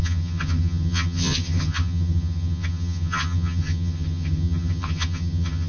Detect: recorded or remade remade